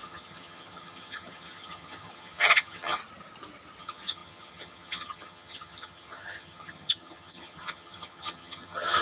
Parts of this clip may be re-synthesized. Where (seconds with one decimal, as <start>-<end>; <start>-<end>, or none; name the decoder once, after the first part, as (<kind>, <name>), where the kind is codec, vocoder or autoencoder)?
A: 0.0-3.0 (vocoder, HiFi-GAN); 3.8-9.0